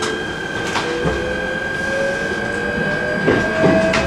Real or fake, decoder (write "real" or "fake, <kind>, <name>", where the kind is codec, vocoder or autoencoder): real